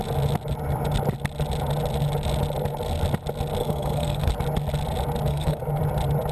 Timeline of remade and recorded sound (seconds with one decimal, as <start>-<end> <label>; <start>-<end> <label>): 0.0-3.6 recorded; 3.6-4.3 remade; 4.3-5.3 recorded; 5.3-5.8 remade; 5.8-6.3 recorded